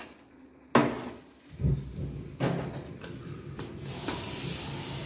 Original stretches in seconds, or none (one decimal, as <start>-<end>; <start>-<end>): 0.0-5.1